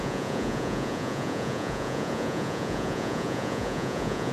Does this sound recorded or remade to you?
remade